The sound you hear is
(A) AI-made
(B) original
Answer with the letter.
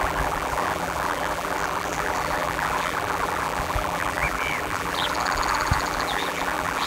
A